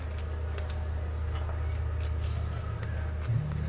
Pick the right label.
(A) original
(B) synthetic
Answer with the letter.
A